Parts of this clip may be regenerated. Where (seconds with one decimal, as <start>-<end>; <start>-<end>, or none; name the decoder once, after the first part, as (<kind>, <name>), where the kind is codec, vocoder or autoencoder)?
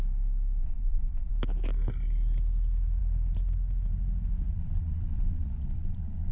0.6-1.3 (vocoder, Vocos); 4.5-6.3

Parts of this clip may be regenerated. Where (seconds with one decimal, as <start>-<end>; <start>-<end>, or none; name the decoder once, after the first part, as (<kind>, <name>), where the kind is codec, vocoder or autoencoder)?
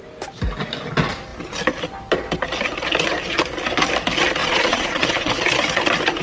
4.4-5.3 (vocoder, Vocos)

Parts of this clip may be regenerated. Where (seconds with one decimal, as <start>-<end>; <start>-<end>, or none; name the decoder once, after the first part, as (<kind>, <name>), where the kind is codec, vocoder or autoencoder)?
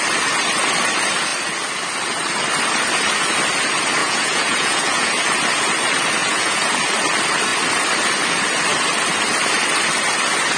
4.0-5.1 (vocoder, Vocos); 6.2-6.7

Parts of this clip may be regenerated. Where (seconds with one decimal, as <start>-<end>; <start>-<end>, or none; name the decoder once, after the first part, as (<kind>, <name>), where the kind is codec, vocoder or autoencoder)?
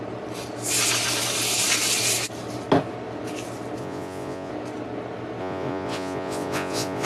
3.8-4.5 (vocoder, Vocos); 5.4-7.1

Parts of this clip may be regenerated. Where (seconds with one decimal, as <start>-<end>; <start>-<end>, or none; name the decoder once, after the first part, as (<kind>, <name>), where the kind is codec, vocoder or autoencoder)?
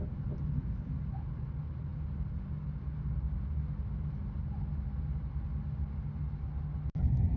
none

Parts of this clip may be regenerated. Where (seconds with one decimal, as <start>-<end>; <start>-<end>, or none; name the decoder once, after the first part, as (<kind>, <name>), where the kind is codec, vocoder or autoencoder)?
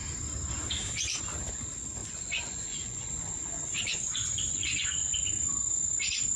2.0-5.3 (vocoder, Vocos)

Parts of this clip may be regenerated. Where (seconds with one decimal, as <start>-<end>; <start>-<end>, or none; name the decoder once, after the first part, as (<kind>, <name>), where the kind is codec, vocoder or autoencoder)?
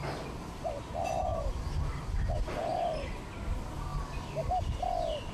none